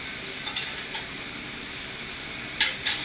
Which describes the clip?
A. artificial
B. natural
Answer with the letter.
B